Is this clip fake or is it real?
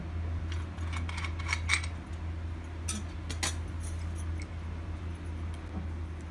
real